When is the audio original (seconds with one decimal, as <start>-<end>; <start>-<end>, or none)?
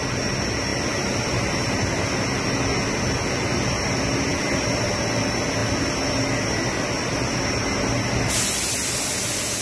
0.0-0.7; 2.1-4.3; 4.9-5.6; 9.0-9.6